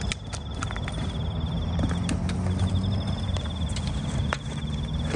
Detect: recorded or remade recorded